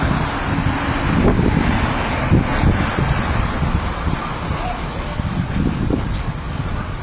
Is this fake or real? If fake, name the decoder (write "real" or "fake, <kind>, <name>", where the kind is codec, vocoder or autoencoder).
fake, vocoder, BigVGAN v2